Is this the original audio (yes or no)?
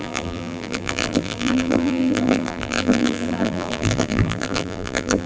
no